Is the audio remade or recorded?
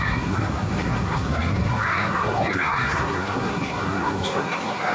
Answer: remade